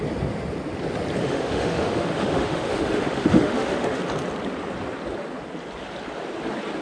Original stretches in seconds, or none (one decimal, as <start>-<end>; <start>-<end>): 0.0-1.2; 4.0-6.8

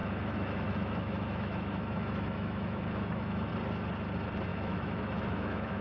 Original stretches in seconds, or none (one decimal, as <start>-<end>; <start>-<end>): 3.5-4.5